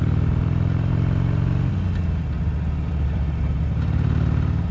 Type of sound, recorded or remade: recorded